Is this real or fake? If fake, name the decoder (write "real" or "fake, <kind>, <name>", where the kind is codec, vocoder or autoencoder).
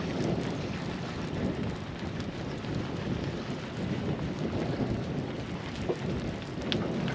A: real